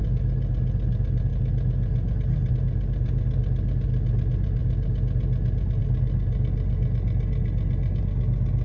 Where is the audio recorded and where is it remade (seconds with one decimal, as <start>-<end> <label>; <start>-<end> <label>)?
0.0-8.6 recorded